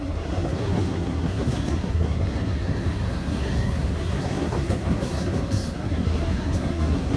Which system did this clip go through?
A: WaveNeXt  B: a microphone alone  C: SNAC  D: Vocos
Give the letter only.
C